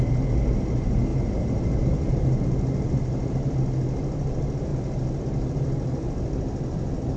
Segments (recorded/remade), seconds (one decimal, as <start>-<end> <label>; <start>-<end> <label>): 0.0-1.1 recorded; 1.1-2.4 remade; 2.4-7.2 recorded